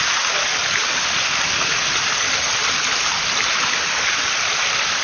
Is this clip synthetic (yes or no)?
no